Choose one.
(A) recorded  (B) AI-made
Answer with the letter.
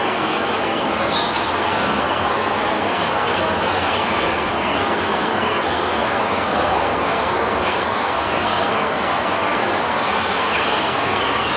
B